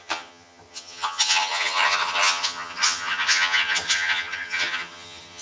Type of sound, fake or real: fake